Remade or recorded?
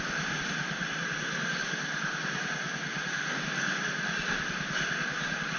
recorded